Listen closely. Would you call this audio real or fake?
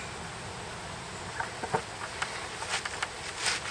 real